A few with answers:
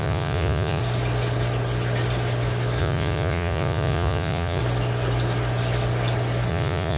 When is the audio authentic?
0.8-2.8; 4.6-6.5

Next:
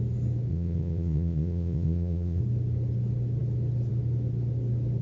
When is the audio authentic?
0.0-0.5; 2.4-5.0

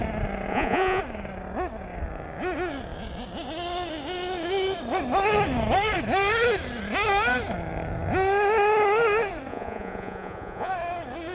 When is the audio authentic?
0.0-0.5; 1.0-9.5; 10.7-11.3

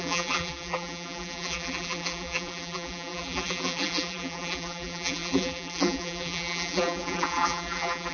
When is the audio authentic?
none

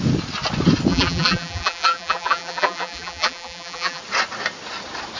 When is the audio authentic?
0.0-0.9; 4.0-5.2

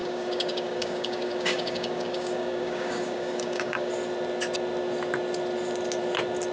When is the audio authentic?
3.9-6.5